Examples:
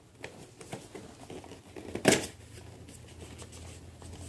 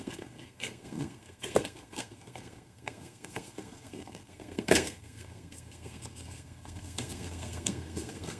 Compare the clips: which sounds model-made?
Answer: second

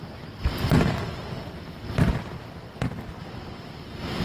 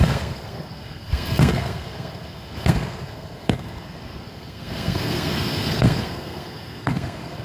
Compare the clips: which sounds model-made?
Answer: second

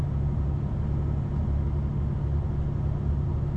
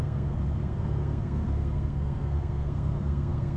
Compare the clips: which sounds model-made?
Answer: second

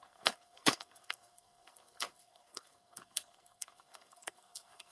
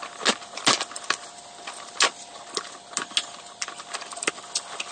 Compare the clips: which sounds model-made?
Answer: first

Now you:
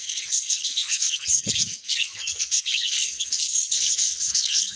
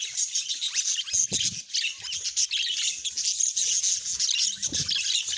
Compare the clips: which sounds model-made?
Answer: first